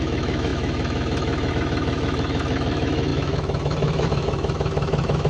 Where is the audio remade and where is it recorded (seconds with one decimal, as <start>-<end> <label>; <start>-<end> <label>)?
0.0-5.3 remade